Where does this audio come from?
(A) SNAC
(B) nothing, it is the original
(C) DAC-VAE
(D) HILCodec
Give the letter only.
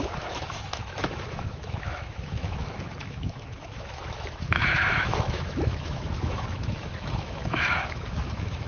C